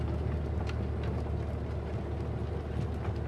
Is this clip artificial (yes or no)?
no